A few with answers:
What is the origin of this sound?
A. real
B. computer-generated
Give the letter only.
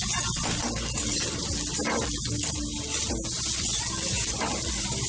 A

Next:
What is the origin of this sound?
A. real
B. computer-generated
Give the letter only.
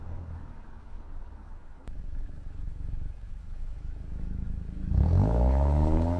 B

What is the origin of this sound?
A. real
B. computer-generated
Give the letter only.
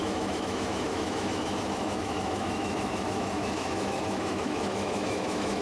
B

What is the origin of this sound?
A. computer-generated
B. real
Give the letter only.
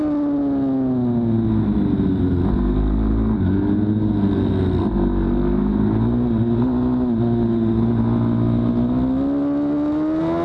B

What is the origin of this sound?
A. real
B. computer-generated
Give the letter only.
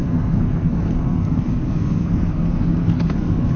B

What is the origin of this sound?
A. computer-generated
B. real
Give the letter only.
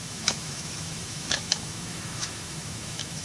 A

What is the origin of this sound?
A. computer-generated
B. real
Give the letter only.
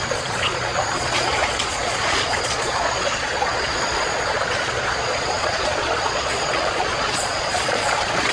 A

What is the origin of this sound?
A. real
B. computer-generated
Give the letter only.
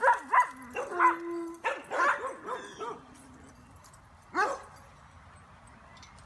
A